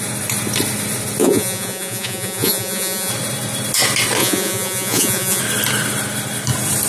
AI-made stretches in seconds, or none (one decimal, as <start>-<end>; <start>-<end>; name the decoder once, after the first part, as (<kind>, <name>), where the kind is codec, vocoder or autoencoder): 1.2-3.1 (vocoder, Vocos); 4.2-5.4